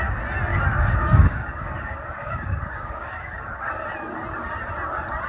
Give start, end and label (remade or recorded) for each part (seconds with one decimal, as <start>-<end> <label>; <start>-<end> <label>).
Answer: 0.0-0.5 recorded; 0.5-3.7 remade; 3.7-5.3 recorded

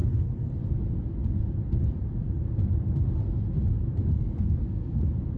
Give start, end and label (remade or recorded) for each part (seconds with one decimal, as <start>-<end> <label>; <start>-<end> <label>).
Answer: 0.0-0.5 remade; 0.5-4.1 recorded; 4.1-5.0 remade; 5.0-5.4 recorded

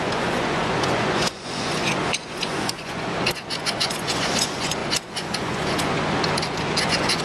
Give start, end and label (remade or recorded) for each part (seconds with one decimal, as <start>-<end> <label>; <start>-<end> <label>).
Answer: 0.0-7.2 remade

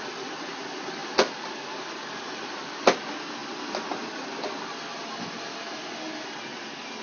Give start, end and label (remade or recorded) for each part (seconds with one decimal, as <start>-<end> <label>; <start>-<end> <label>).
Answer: 0.0-7.0 recorded

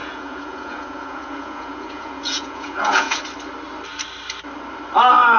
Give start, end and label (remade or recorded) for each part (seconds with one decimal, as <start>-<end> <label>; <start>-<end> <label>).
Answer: 0.0-3.2 remade; 3.2-5.4 recorded

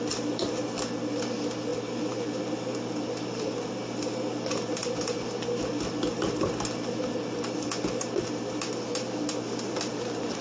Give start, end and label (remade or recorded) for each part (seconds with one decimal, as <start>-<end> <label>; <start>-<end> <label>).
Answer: 0.0-10.4 recorded

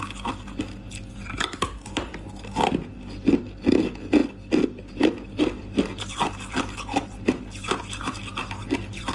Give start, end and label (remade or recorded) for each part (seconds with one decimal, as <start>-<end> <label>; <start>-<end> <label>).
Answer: 0.0-9.1 recorded

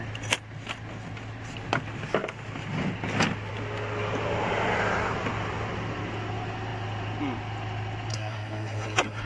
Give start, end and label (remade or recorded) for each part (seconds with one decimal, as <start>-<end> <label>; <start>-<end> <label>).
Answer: 0.0-8.1 recorded; 8.1-9.3 remade